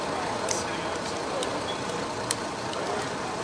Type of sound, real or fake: real